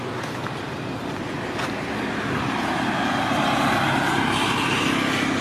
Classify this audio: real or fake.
real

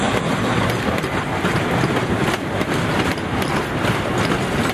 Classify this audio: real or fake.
fake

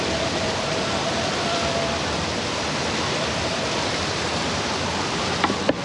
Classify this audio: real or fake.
fake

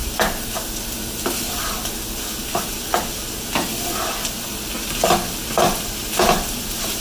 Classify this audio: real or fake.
real